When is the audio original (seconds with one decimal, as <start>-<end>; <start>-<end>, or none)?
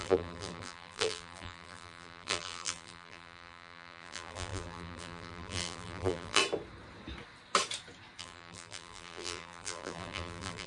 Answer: 6.4-8.2